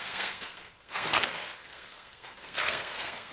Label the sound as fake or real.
fake